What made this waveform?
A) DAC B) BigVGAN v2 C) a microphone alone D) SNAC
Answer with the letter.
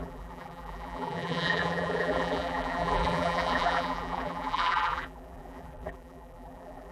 B